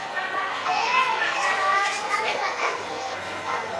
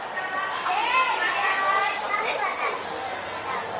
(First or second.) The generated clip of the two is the first